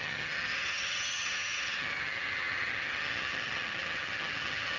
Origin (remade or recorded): remade